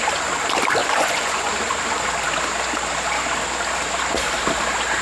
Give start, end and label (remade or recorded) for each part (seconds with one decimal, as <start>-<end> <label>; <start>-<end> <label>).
0.0-0.8 recorded; 0.8-1.5 remade; 1.5-5.0 recorded